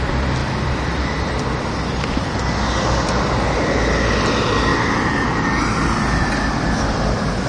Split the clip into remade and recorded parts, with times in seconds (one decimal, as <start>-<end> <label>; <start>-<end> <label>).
0.0-0.4 recorded; 0.4-1.3 remade; 1.3-7.5 recorded